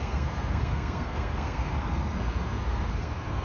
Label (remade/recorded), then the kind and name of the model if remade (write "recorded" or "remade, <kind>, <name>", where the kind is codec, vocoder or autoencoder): remade, codec, SNAC